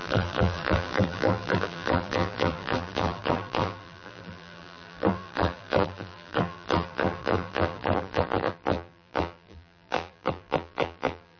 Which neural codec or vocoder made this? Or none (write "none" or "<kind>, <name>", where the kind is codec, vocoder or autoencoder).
vocoder, BigVGAN v2